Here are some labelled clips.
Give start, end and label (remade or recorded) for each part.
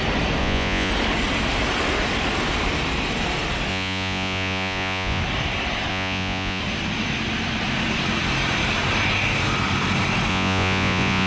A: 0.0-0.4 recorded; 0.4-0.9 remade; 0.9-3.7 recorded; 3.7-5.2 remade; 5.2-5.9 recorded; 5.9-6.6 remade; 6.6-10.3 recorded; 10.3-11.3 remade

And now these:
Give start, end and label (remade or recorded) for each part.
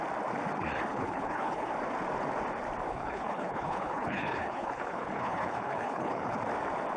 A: 0.0-0.9 recorded; 0.9-1.7 remade; 1.7-2.9 recorded; 2.9-6.4 remade; 6.4-7.0 recorded